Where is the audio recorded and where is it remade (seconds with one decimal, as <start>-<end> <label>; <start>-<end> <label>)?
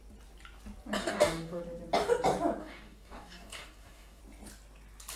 0.0-1.0 recorded; 1.0-1.6 remade; 1.6-2.6 recorded; 2.6-4.2 remade; 4.2-5.2 recorded